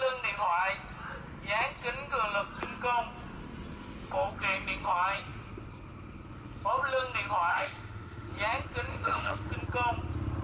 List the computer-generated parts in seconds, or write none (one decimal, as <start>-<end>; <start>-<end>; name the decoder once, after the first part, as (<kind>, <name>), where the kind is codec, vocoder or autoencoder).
7.5-8.3 (autoencoder, DAC-VAE); 8.9-9.5